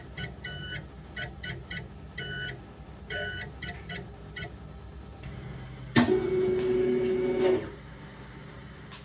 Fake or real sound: fake